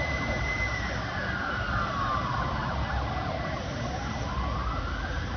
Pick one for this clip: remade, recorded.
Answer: recorded